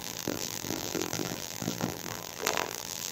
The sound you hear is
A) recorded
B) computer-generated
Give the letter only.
B